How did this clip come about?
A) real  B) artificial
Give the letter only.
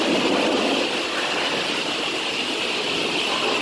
A